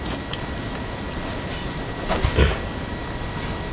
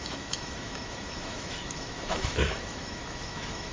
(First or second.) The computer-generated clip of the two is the second